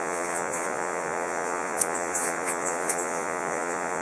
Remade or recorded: remade